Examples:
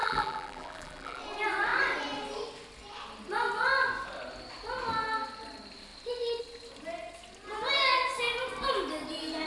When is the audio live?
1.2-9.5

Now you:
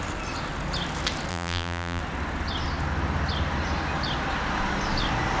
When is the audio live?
0.0-1.3; 2.0-5.4

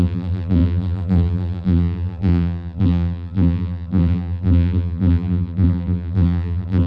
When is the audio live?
none

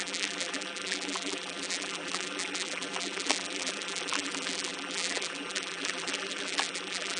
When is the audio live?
none